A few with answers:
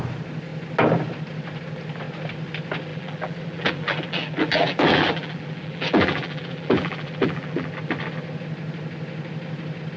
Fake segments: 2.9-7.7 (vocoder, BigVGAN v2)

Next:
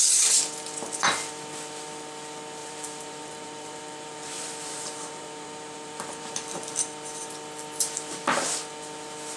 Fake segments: 2.6-6.3 (vocoder, BigVGAN v2)

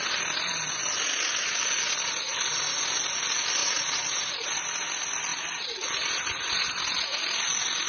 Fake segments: 3.6-4.3 (vocoder, Vocos)

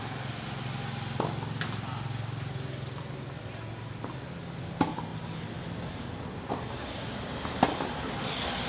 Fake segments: none

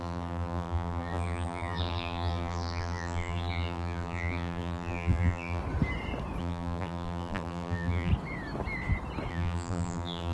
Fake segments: 0.0-5.6 (vocoder, BigVGAN v2); 6.4-8.1; 9.3-10.3

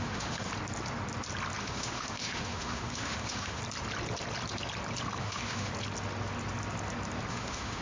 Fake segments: 0.0-0.5 (autoencoder, DAC-VAE); 1.6-3.6; 5.2-5.7; 7.3-7.8

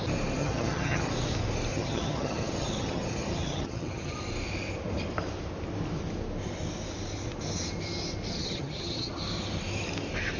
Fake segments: 0.4-1.1 (vocoder, HiFi-GAN); 1.7-4.2; 8.3-9.1

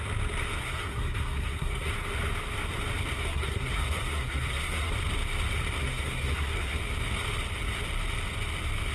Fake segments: 0.6-1.9 (codec, SNAC); 3.2-4.9; 5.8-6.8